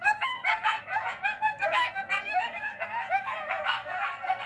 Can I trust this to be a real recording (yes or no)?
no